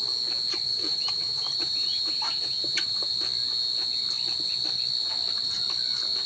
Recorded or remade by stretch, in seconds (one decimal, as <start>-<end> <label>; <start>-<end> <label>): 0.0-0.7 recorded; 0.7-3.1 remade; 3.1-6.3 recorded